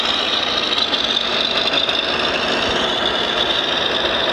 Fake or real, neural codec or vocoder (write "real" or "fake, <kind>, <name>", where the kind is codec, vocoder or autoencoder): real